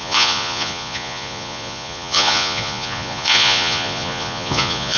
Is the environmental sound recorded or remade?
remade